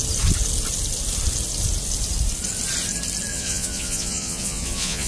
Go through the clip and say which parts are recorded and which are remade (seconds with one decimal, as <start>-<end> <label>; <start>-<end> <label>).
0.0-3.3 recorded; 3.3-5.1 remade